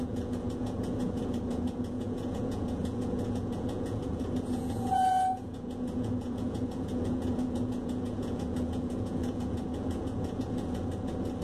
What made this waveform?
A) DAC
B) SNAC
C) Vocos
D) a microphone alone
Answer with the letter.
C